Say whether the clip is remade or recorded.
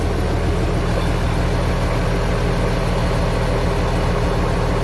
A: recorded